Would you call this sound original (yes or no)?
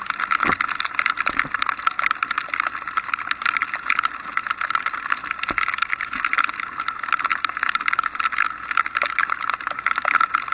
yes